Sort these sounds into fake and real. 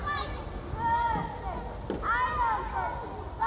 real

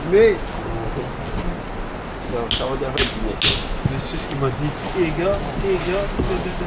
real